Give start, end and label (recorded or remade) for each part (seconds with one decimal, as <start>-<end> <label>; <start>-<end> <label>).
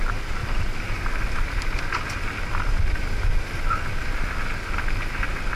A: 0.0-5.6 recorded